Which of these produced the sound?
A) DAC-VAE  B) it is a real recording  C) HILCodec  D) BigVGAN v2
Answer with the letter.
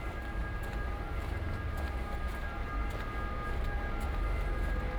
B